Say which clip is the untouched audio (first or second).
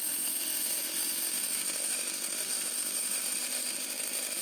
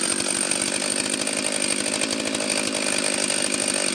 second